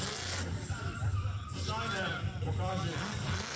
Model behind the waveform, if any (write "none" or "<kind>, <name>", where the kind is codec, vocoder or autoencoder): none